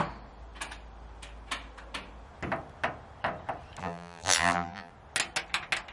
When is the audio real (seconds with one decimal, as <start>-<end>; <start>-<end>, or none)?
0.0-3.8; 4.9-5.9